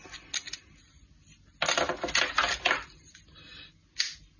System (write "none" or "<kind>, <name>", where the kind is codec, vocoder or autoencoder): none